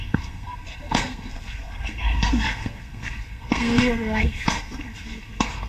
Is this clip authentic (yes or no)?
no